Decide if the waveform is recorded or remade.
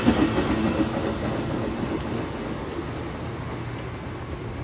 recorded